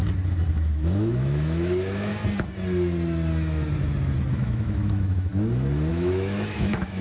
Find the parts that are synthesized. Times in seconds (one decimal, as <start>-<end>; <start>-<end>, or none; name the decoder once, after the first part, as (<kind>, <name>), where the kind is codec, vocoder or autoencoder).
0.5-2.1 (autoencoder, DAC-VAE); 4.3-5.3; 5.9-7.0